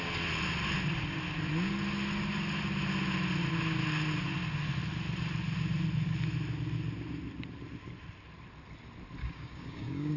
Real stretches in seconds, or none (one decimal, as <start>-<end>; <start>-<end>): 0.0-9.2